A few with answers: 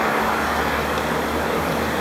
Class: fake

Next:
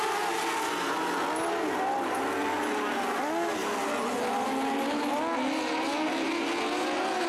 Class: real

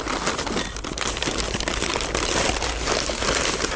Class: real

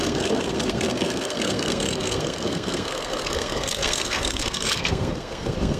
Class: fake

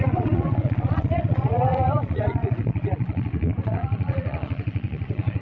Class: fake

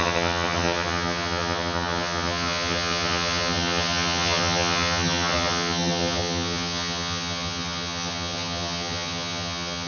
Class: fake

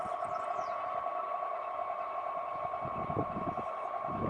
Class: real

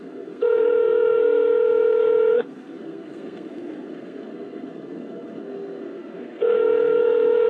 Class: fake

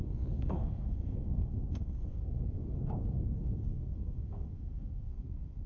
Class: fake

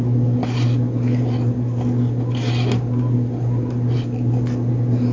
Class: real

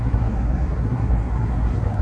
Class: fake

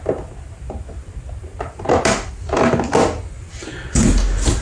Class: real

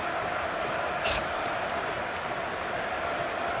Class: real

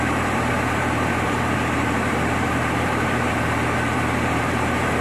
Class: fake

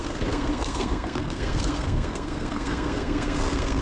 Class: fake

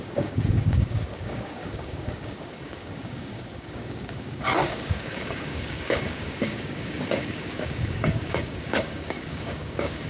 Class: fake